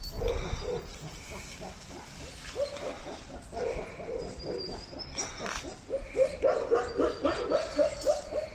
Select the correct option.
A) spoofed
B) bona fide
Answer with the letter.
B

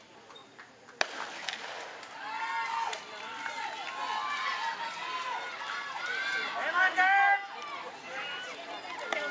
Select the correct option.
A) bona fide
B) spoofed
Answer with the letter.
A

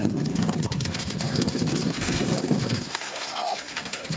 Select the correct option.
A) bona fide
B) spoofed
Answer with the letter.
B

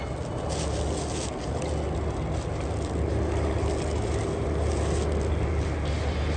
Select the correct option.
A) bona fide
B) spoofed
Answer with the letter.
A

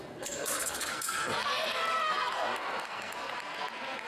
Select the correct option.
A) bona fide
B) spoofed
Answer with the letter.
B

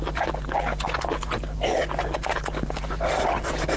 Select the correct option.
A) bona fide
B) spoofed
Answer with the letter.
A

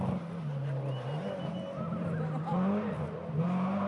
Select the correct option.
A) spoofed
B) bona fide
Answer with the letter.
B